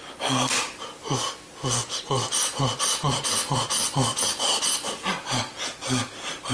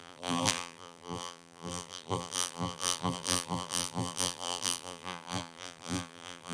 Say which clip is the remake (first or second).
second